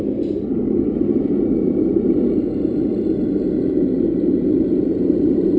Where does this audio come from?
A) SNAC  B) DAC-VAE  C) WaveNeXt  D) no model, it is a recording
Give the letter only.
D